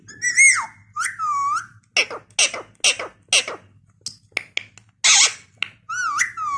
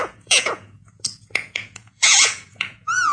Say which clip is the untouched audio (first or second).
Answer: first